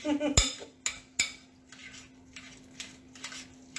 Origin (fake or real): real